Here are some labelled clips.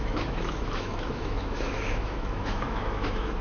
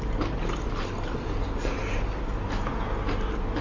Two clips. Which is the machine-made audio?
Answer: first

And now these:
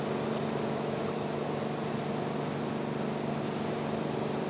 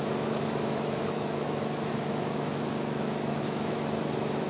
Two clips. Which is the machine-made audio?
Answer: second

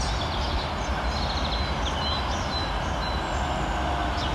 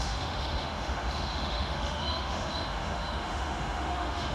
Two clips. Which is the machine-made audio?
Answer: second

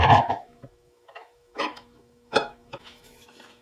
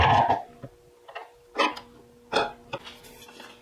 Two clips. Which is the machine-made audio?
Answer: first